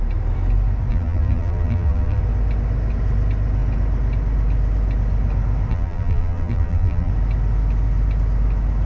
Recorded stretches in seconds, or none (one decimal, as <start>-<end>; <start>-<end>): 0.0-0.9; 2.2-5.7; 7.1-8.9